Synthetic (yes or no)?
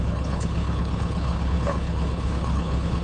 yes